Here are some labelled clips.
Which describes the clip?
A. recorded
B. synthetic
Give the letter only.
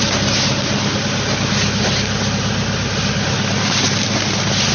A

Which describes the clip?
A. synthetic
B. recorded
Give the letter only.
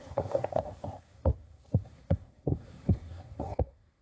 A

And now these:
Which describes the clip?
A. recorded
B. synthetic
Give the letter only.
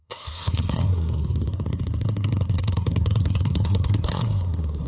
B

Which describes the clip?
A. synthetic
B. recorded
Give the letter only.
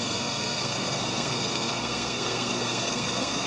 A